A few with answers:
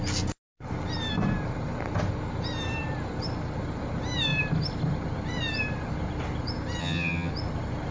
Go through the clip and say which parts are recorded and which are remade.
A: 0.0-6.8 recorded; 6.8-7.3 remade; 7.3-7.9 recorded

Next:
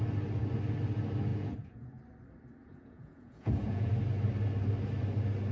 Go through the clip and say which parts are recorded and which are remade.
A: 0.0-1.3 recorded; 1.3-2.0 remade; 2.0-2.6 recorded; 2.6-3.9 remade; 3.9-5.5 recorded

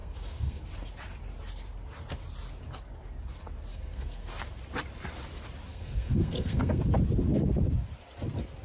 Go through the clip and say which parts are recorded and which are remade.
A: 0.0-0.6 remade; 0.6-3.7 recorded; 3.7-4.3 remade; 4.3-5.7 recorded; 5.7-6.8 remade; 6.8-8.6 recorded

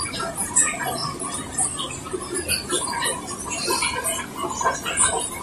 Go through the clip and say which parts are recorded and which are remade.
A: 0.0-1.0 recorded; 1.0-4.2 remade; 4.2-5.4 recorded

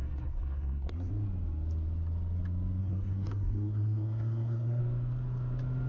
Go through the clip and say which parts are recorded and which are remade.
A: 0.0-1.1 remade; 1.1-2.8 recorded; 2.8-4.8 remade; 4.8-5.9 recorded

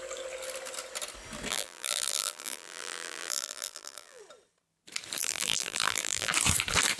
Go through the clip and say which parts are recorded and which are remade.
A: 0.0-1.5 recorded; 1.5-4.2 remade; 4.2-5.2 recorded; 5.2-6.3 remade; 6.3-7.0 recorded

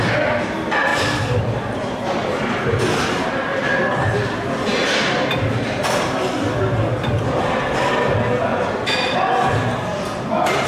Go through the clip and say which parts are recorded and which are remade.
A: 0.0-0.9 recorded; 0.9-2.8 remade; 2.8-6.9 recorded; 6.9-7.4 remade; 7.4-10.7 recorded